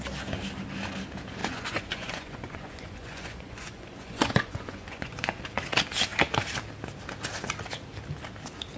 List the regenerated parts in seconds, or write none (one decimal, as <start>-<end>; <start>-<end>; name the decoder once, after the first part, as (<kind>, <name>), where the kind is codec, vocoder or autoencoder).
1.4-5.4 (vocoder, Vocos)